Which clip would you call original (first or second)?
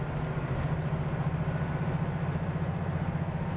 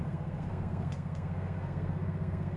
first